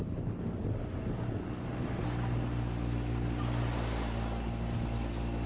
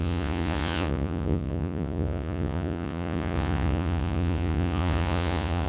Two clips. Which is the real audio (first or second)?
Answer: first